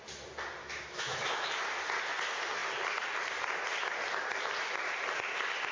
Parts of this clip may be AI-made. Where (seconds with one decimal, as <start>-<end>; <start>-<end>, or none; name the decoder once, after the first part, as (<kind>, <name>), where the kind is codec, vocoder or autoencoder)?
0.6-1.5 (autoencoder, DAC-VAE)